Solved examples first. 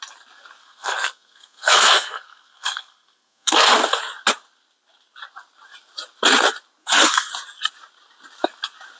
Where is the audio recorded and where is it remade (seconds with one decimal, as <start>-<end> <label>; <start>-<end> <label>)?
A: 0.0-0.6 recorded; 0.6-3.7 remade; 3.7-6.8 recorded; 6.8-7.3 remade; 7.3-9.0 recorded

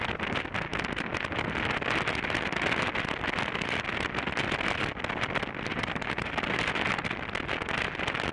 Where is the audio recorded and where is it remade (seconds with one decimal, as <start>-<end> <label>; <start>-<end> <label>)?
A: 0.0-5.7 recorded; 5.7-6.3 remade; 6.3-8.3 recorded

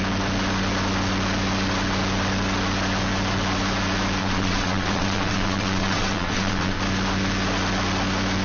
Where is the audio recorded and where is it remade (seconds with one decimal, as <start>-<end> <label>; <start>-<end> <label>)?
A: 0.0-4.2 recorded; 4.2-6.8 remade; 6.8-8.4 recorded